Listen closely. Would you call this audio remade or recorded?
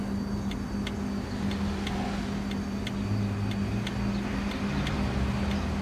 recorded